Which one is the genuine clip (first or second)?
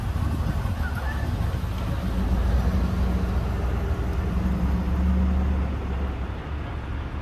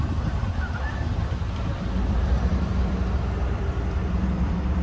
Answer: first